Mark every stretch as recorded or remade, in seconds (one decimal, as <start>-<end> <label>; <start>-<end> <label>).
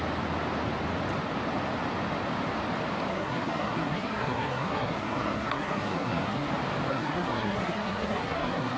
0.0-3.1 recorded; 3.1-6.5 remade; 6.5-6.9 recorded; 6.9-8.8 remade